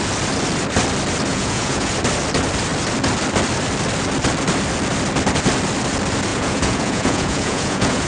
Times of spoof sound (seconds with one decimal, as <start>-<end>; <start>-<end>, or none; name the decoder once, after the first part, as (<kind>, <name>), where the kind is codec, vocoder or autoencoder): 1.3-1.9 (vocoder, Vocos); 6.3-8.1